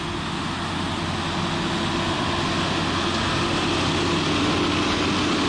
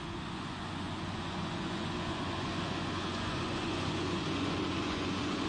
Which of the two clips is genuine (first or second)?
first